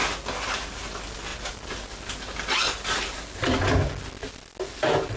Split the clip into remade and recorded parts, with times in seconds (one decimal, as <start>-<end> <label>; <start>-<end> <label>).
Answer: 0.0-5.2 recorded